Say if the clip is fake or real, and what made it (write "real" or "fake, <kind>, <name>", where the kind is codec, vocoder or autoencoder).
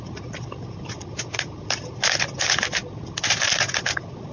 real